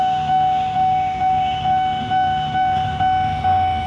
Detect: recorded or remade remade